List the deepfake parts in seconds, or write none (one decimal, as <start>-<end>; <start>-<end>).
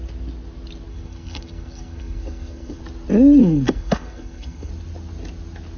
0.9-2.8; 3.4-4.7